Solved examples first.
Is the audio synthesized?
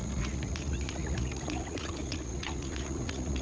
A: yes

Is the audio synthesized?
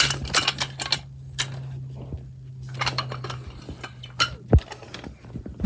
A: no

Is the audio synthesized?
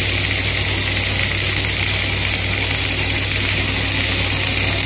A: no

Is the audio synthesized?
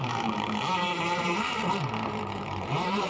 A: yes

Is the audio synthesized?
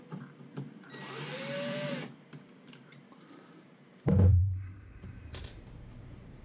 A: yes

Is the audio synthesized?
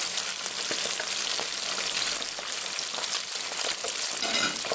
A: no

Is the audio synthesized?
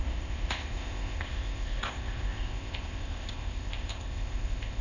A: yes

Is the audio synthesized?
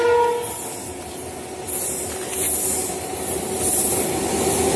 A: no